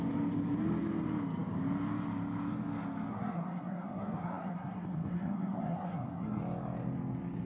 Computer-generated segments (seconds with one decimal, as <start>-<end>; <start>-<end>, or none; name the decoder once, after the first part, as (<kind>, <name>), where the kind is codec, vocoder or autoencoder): 3.1-6.4 (codec, SNAC)